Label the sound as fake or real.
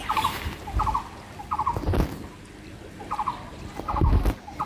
real